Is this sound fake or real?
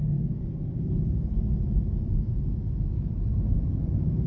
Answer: fake